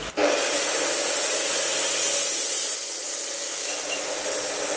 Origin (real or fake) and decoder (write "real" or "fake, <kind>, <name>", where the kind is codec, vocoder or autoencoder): real